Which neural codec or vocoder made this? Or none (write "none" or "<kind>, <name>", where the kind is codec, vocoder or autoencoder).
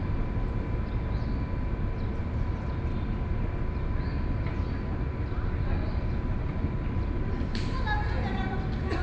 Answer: none